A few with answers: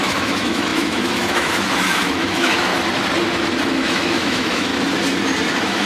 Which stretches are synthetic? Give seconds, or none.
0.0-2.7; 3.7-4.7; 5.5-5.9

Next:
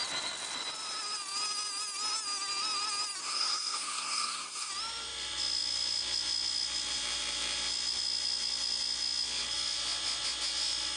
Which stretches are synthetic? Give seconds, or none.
3.2-4.7

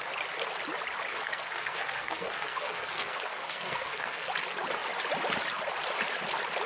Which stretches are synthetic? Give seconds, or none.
1.1-4.3

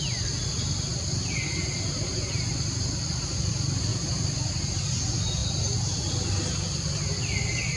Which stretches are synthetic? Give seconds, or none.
1.6-3.5; 3.9-4.5

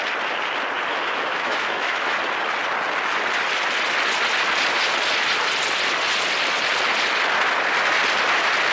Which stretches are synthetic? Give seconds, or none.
0.9-2.2

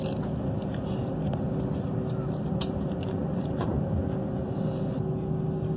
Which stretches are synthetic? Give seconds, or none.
3.0-3.8

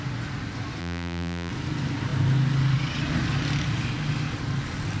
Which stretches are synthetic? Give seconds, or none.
0.8-1.5

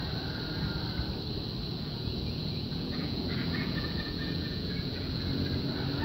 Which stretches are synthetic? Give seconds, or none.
1.7-5.3